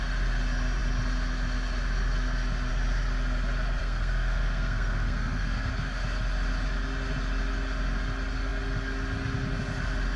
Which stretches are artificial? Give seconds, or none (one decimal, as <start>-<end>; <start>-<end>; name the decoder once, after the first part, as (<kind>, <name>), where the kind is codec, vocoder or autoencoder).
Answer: 3.8-5.7 (codec, SNAC)